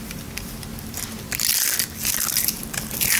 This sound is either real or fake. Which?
real